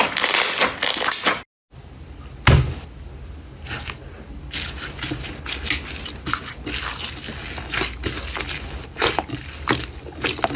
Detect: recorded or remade recorded